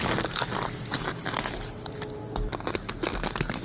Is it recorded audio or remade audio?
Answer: recorded